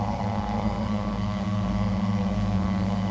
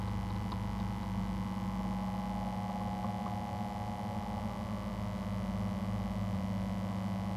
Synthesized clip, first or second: first